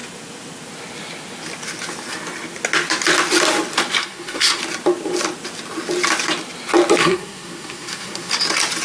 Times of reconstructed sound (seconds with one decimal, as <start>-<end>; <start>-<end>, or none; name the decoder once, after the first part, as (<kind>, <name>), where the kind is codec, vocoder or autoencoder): 4.0-4.6 (codec, SNAC); 7.0-8.3